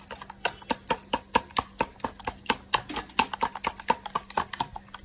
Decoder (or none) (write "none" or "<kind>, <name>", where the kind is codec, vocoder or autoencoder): none